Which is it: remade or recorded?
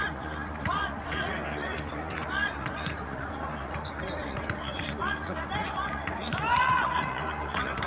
remade